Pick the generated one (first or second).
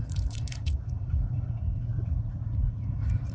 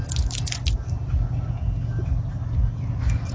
first